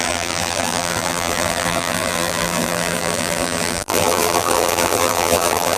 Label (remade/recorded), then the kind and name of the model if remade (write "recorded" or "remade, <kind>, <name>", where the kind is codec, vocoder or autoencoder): remade, vocoder, BigVGAN v2